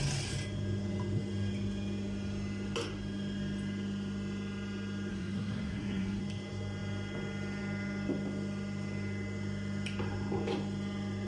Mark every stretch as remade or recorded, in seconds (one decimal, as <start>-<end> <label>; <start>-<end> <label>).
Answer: 0.0-5.1 recorded; 5.1-6.2 remade; 6.2-11.3 recorded